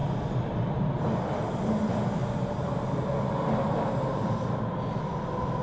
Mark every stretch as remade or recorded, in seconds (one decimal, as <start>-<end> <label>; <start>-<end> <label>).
0.0-5.6 recorded